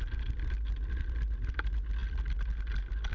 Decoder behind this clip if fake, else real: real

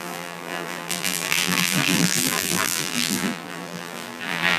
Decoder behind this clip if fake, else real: fake, vocoder, BigVGAN v2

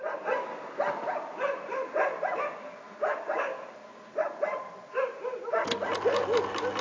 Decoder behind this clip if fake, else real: real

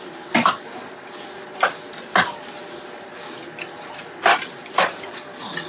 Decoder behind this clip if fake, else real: real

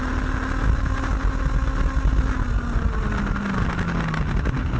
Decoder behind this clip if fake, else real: real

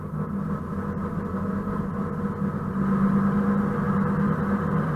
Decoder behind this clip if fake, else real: real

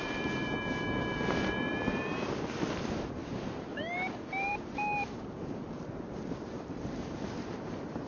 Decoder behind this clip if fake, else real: fake, vocoder, BigVGAN v2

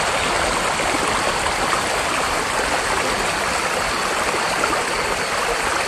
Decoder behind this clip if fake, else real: real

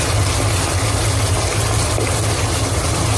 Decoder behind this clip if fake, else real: real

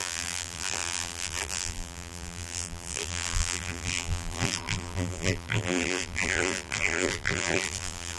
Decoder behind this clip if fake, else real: fake, vocoder, BigVGAN v2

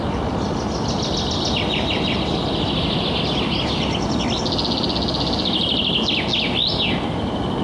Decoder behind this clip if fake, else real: real